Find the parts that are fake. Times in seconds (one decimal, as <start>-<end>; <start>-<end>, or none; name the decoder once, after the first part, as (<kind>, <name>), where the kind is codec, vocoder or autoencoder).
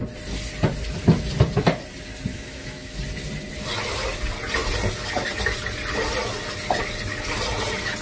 2.3-3.0 (autoencoder, DAC-VAE)